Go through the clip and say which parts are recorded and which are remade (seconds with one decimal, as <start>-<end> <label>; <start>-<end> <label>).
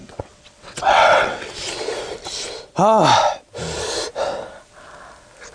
0.0-1.5 remade; 1.5-5.5 recorded